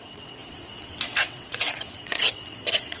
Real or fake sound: fake